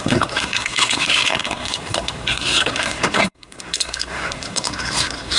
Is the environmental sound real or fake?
fake